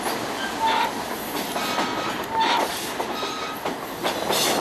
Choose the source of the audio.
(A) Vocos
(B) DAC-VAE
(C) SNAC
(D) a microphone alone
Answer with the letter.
D